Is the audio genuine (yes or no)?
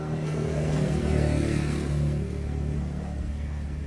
no